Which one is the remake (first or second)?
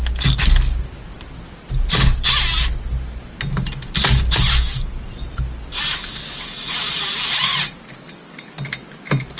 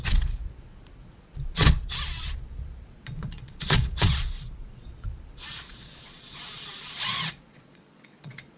second